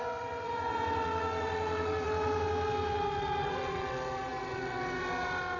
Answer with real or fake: fake